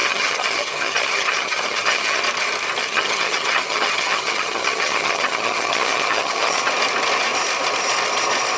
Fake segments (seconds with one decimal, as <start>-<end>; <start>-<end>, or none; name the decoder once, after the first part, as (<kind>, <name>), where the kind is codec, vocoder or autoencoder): 0.0-2.2 (vocoder, HiFi-GAN); 2.8-6.6